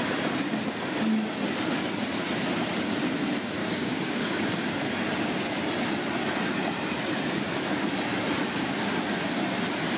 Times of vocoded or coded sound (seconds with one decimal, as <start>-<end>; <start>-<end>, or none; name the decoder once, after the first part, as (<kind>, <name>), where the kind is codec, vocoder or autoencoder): 3.6-4.7 (codec, DAC)